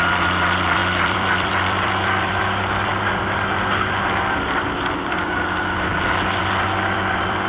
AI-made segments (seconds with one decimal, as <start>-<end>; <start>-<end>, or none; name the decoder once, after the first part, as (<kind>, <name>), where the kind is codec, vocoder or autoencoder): 0.0-2.9 (vocoder, BigVGAN v2); 6.3-7.5